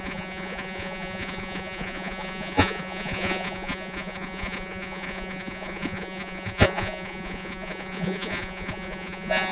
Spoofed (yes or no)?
yes